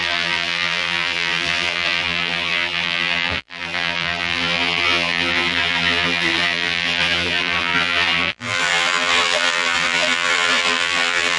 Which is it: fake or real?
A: fake